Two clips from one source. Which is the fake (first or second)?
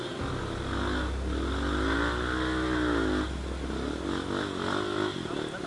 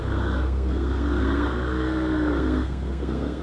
second